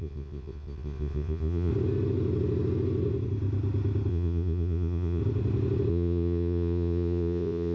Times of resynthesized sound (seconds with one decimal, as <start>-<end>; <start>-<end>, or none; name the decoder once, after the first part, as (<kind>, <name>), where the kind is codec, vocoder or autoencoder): 0.0-1.7 (vocoder, Vocos); 4.1-5.2; 5.9-7.7